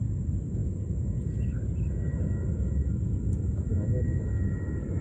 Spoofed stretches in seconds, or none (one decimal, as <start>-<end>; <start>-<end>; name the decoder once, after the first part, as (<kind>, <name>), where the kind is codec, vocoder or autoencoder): none